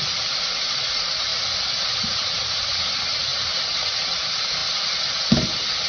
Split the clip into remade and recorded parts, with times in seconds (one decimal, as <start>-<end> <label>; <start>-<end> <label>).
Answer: 0.0-1.3 remade; 1.3-2.0 recorded; 2.0-4.6 remade; 4.6-5.3 recorded; 5.3-5.9 remade